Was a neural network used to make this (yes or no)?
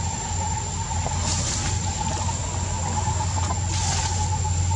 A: no